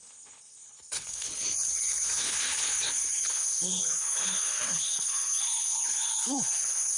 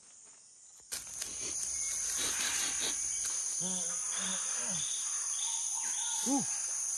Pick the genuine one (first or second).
second